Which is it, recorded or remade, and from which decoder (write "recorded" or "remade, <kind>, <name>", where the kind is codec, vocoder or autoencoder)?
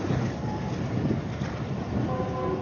recorded